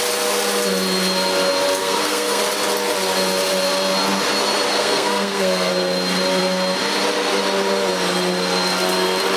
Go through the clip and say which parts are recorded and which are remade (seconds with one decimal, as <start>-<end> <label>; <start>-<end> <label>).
0.0-1.8 recorded; 1.8-2.4 remade; 2.4-4.7 recorded; 4.7-5.7 remade; 5.7-9.4 recorded